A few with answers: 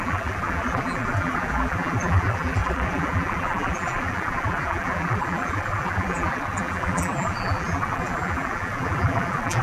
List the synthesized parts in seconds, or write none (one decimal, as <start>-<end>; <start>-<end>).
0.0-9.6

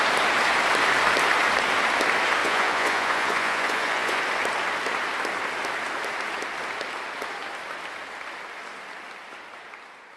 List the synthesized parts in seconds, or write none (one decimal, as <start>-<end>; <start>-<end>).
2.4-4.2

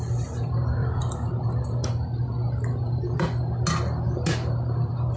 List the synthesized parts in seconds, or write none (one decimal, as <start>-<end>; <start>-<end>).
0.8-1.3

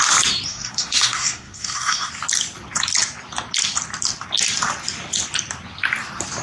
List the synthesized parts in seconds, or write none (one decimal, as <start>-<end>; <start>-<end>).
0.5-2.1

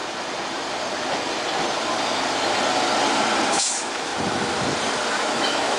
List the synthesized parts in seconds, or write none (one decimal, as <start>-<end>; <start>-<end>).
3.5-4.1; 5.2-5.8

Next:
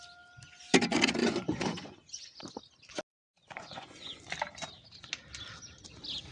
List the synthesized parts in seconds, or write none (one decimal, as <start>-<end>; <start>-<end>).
1.2-2.4; 3.1-4.2